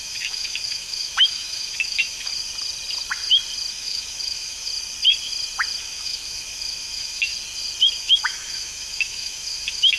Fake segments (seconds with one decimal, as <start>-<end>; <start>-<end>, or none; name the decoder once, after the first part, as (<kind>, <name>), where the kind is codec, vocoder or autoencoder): 0.0-2.3 (autoencoder, DAC-VAE); 3.7-4.7; 5.8-7.3; 8.0-10.0